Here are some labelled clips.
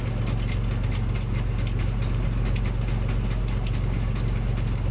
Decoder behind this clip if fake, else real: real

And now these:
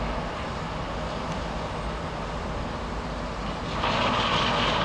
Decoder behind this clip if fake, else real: real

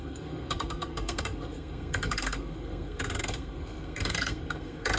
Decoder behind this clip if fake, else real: fake, codec, SNAC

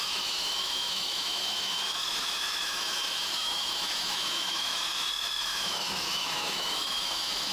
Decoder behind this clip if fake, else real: fake, autoencoder, DAC-VAE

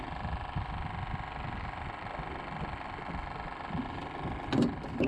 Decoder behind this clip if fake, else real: real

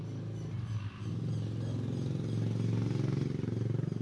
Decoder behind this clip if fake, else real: real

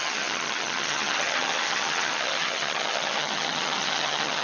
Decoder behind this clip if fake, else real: fake, vocoder, HiFi-GAN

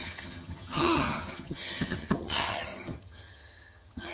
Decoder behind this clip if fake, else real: fake, vocoder, HiFi-GAN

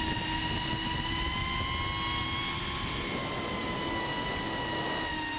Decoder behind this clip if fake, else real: real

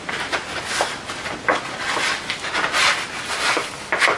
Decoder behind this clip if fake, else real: real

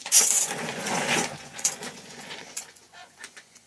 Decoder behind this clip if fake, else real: fake, vocoder, Vocos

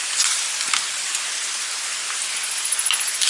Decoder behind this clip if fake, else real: real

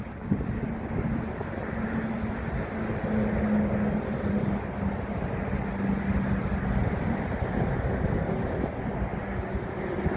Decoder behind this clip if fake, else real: real